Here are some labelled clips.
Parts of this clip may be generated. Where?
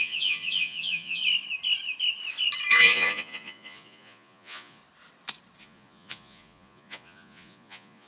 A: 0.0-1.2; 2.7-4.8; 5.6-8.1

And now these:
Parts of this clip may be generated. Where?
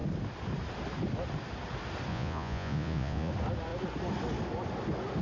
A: 2.1-3.3